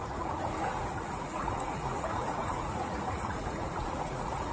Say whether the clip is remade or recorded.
remade